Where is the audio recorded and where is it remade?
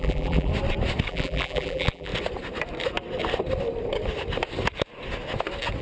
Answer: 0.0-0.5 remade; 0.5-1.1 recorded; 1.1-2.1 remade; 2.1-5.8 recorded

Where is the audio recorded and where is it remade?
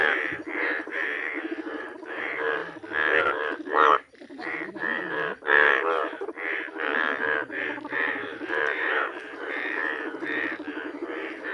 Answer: 0.0-2.6 remade; 2.6-3.2 recorded; 3.2-11.5 remade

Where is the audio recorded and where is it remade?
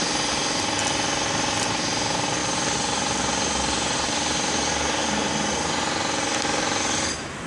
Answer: 0.0-2.4 recorded; 2.4-4.5 remade; 4.5-7.5 recorded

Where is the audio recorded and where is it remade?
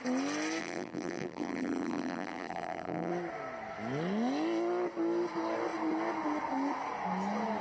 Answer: 0.0-0.6 recorded; 0.6-3.1 remade; 3.1-7.6 recorded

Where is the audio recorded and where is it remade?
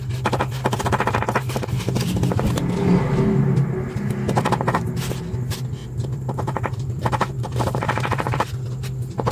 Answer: 0.0-5.8 recorded; 5.8-8.5 remade; 8.5-9.3 recorded